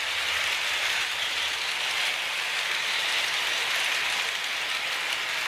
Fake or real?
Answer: real